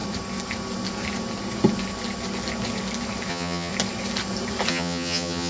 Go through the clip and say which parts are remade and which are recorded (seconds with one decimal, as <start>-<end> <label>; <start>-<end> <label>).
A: 0.0-3.3 recorded; 3.3-3.7 remade; 3.7-4.7 recorded; 4.7-5.5 remade